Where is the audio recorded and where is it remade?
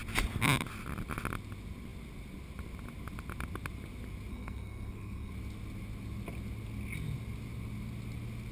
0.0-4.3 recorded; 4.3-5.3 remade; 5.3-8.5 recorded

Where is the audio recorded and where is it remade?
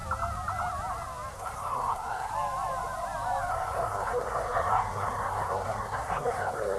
0.0-1.3 recorded; 1.3-2.3 remade; 2.3-3.5 recorded; 3.5-6.8 remade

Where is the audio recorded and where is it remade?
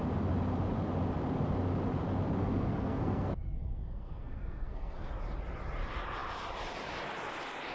0.0-2.4 recorded; 2.4-5.1 remade; 5.1-7.7 recorded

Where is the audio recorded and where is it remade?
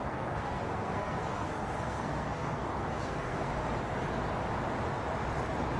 0.0-3.5 remade; 3.5-5.8 recorded